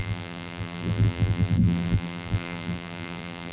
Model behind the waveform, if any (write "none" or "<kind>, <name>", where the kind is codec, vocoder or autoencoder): vocoder, BigVGAN v2